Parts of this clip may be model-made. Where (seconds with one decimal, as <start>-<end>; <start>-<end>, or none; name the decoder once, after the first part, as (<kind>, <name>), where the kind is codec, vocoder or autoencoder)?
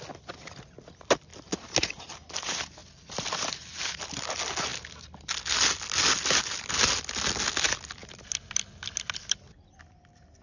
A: 2.8-3.9 (vocoder, BigVGAN v2)